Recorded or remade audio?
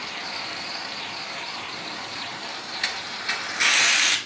remade